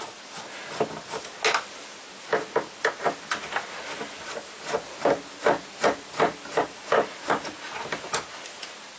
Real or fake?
real